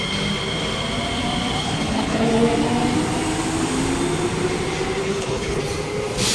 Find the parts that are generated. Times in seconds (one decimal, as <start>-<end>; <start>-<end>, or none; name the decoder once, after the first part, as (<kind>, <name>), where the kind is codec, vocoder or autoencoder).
1.6-2.3 (codec, HILCodec); 5.0-5.6